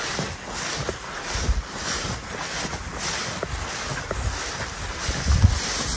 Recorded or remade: recorded